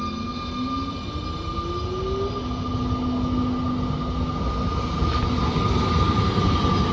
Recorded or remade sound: recorded